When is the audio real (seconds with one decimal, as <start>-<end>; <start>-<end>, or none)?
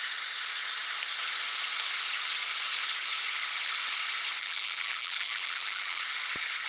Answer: 0.0-4.4; 6.0-6.7